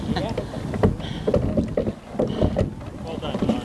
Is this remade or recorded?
recorded